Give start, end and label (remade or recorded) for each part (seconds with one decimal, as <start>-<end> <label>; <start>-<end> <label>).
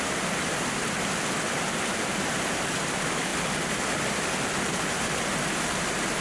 0.0-6.2 recorded